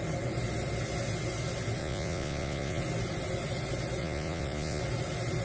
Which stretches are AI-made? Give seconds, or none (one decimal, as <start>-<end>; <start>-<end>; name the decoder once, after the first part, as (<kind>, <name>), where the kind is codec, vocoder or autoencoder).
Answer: 1.8-2.8 (vocoder, Vocos); 4.0-4.8